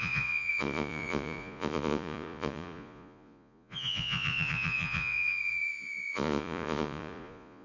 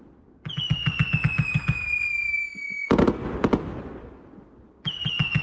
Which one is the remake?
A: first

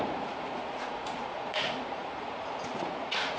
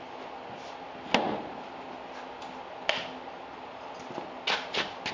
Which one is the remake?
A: first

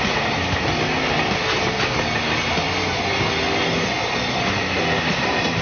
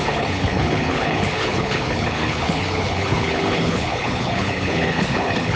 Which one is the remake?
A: second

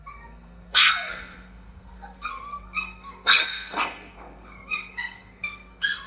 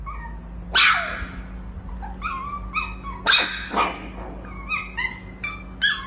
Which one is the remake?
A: first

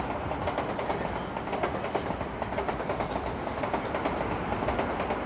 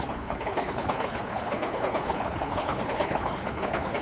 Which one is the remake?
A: second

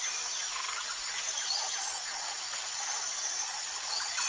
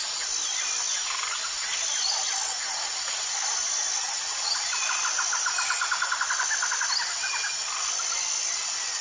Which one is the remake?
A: first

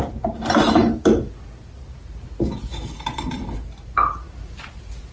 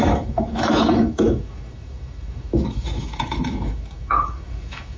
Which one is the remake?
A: second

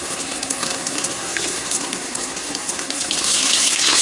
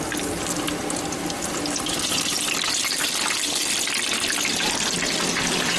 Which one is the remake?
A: first